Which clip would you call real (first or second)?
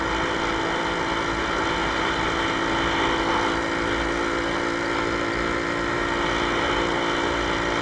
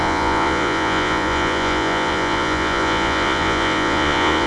first